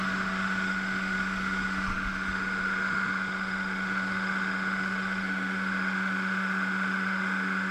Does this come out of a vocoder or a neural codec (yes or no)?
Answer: yes